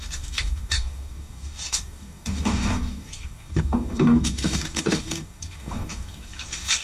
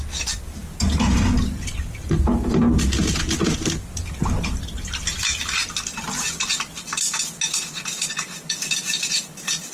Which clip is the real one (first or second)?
second